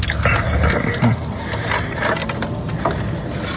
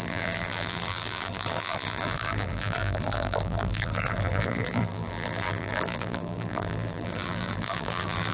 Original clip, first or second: first